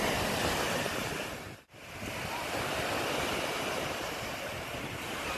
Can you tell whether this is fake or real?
real